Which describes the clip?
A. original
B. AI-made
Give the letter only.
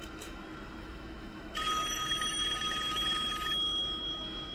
B